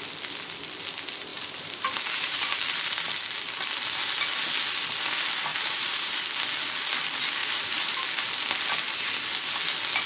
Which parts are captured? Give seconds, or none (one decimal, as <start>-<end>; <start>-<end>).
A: 0.0-1.3; 2.8-5.5; 6.2-7.4; 7.9-10.1